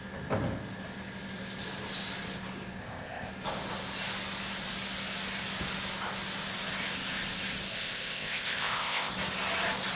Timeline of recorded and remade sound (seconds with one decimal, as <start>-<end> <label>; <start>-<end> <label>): 0.0-2.8 recorded; 2.8-3.3 remade; 3.3-7.7 recorded; 7.7-9.1 remade; 9.1-9.9 recorded